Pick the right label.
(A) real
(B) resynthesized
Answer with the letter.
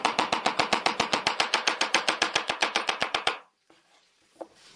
B